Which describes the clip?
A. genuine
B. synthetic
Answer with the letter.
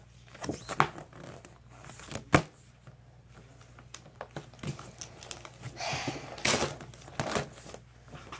A